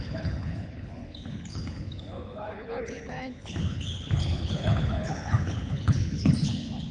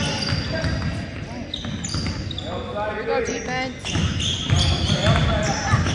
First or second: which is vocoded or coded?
first